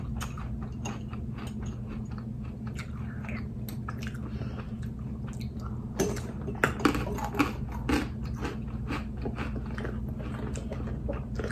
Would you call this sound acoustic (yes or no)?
yes